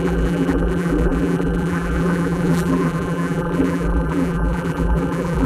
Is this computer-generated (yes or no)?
yes